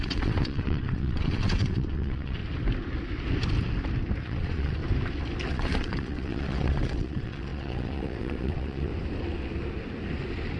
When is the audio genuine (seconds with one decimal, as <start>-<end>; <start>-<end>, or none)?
2.4-4.2; 4.8-5.5; 8.9-10.6